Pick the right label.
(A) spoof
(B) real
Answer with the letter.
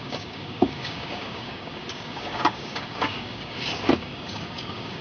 A